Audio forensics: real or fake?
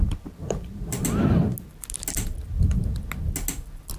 real